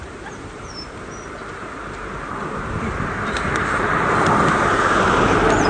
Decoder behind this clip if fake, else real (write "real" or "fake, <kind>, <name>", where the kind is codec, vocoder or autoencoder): fake, vocoder, BigVGAN v2